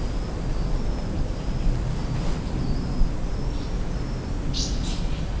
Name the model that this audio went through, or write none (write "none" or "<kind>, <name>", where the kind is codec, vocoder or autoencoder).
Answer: none